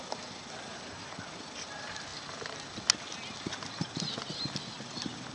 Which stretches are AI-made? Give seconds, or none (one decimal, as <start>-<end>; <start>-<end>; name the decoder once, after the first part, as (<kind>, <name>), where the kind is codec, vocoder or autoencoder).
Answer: none